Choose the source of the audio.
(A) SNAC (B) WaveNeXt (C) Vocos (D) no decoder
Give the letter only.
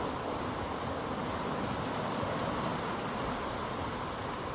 D